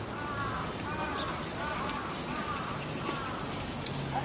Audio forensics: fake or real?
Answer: real